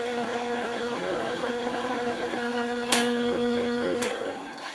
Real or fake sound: fake